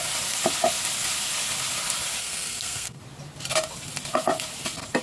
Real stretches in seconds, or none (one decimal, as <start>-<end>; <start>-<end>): 0.0-2.2; 3.0-5.0